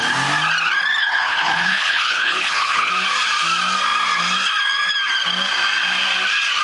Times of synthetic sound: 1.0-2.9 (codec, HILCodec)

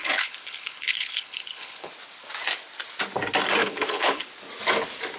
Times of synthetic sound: 0.0-1.9 (codec, HILCodec); 3.6-4.3

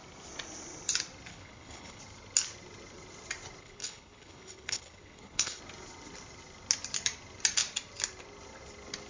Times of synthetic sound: 1.3-2.0 (codec, HILCodec); 3.6-5.6

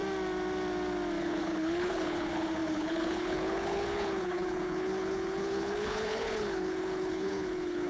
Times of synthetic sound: 1.2-7.9 (codec, HILCodec)

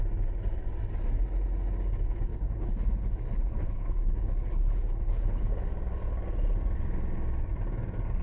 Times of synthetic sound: 2.3-5.5 (codec, HILCodec)